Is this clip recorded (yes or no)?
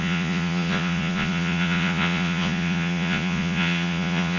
no